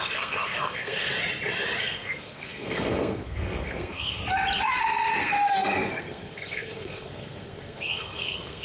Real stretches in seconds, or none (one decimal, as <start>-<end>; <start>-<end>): 1.1-1.8; 4.2-4.7